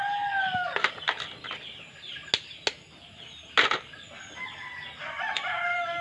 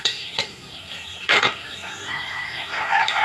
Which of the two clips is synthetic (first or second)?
second